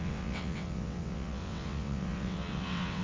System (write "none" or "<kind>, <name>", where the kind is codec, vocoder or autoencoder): vocoder, WaveNeXt